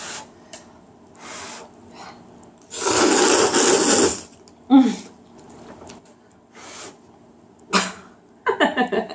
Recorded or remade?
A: recorded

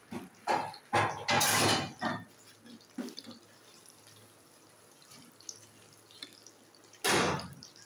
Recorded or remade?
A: recorded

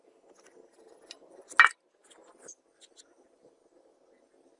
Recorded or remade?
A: recorded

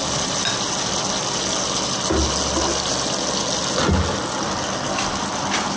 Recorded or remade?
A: recorded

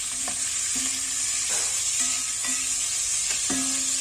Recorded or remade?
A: recorded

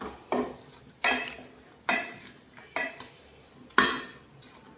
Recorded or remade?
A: recorded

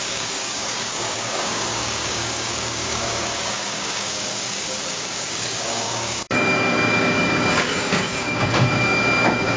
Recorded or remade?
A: remade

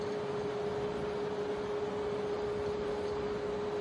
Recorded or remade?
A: recorded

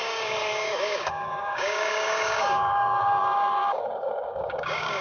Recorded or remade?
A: remade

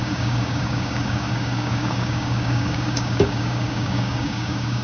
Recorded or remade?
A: remade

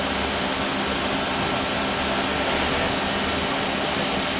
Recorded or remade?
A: recorded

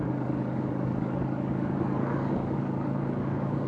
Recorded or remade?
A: remade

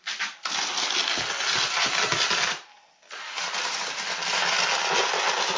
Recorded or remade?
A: recorded